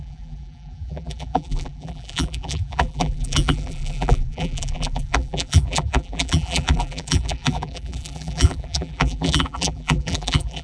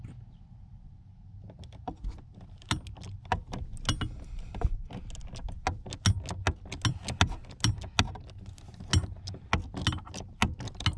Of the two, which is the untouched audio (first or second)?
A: second